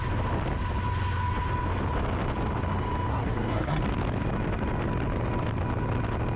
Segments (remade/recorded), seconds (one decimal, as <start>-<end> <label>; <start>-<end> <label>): 0.0-3.1 recorded; 3.1-3.8 remade; 3.8-6.4 recorded